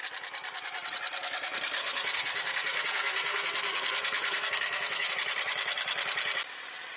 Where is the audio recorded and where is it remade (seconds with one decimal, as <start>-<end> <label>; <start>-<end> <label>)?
0.0-1.8 recorded; 1.8-5.1 remade; 5.1-7.0 recorded